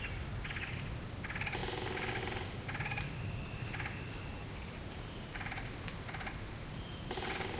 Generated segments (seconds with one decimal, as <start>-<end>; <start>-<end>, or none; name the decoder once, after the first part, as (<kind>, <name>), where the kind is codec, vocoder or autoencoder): 4.3-5.6 (vocoder, BigVGAN v2); 6.7-7.6